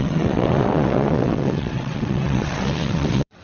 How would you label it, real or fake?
fake